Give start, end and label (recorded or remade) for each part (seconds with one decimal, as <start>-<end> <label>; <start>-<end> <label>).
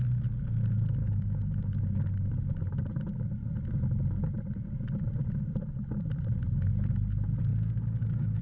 0.0-1.0 recorded; 1.0-1.6 remade; 1.6-7.5 recorded; 7.5-8.4 remade